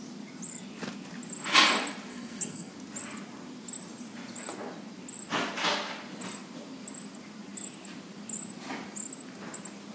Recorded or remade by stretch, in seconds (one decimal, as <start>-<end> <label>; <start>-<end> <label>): 0.0-2.1 recorded; 2.1-2.7 remade; 2.7-9.9 recorded